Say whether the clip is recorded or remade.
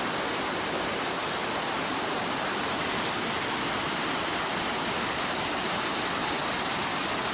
recorded